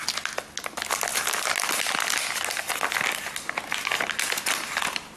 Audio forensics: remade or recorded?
recorded